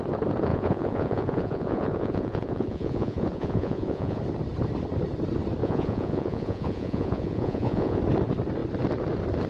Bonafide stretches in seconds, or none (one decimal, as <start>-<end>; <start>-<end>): 0.0-0.5; 4.2-5.6; 8.0-9.5